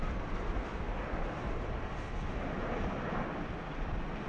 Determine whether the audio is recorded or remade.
recorded